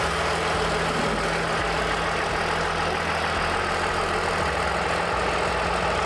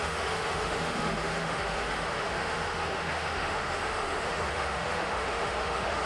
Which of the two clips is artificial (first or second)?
second